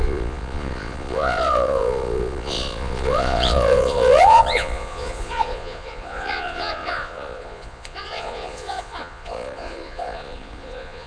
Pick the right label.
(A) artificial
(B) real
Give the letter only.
A